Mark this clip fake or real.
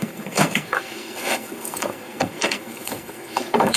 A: fake